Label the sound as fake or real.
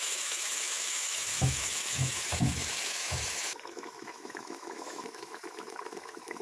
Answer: fake